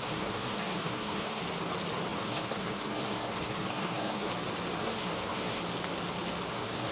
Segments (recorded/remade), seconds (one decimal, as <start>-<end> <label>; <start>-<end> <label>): 0.0-1.4 remade; 1.4-2.2 recorded; 2.2-4.3 remade; 4.3-4.8 recorded; 4.8-5.6 remade; 5.6-6.5 recorded; 6.5-6.9 remade